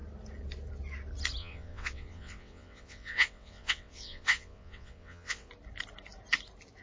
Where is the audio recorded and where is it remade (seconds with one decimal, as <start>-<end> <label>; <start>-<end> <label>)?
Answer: 0.0-1.4 recorded; 1.4-5.5 remade; 5.5-6.8 recorded